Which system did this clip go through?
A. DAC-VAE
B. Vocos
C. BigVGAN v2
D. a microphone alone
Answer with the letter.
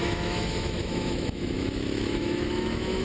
A